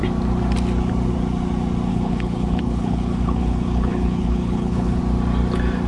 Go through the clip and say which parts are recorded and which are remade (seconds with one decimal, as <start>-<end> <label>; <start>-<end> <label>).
0.0-1.9 recorded; 1.9-5.0 remade; 5.0-5.9 recorded

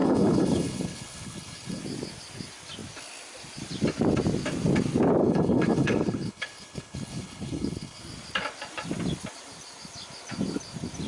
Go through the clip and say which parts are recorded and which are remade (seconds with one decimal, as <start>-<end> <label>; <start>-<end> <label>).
0.0-1.8 remade; 1.8-5.2 recorded; 5.2-8.0 remade; 8.0-11.1 recorded

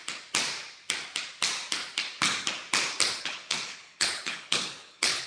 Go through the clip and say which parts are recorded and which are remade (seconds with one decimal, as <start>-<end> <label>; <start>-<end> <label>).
0.0-3.2 recorded; 3.2-5.3 remade